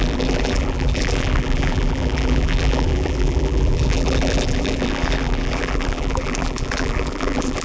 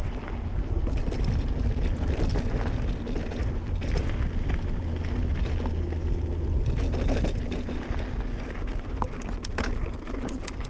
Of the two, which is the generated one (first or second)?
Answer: first